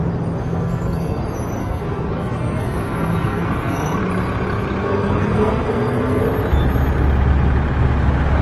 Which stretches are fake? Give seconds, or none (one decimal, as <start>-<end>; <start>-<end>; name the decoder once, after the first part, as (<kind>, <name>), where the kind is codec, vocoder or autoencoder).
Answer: 0.4-1.2 (codec, SNAC); 1.6-4.0; 4.8-6.2